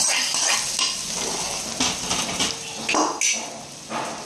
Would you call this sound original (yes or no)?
yes